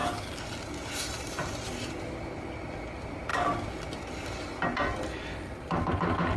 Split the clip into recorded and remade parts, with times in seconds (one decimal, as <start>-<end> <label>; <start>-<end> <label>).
0.0-6.4 recorded